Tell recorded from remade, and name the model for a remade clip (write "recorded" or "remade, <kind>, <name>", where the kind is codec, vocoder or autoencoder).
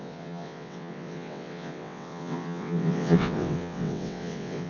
remade, vocoder, WaveNeXt